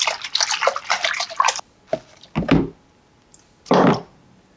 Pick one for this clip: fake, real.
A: real